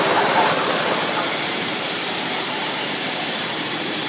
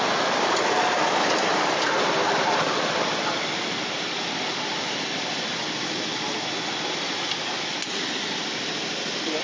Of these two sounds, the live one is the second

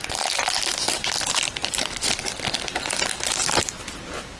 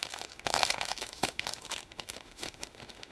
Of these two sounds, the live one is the first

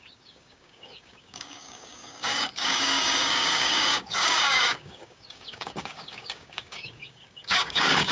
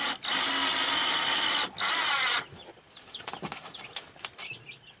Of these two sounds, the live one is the second